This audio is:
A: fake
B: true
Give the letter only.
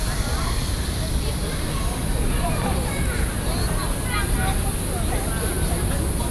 B